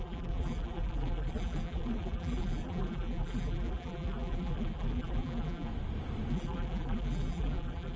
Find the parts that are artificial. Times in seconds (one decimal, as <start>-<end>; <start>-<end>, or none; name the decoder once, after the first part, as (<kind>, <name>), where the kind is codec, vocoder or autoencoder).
0.0-5.7 (vocoder, BigVGAN v2); 6.3-8.0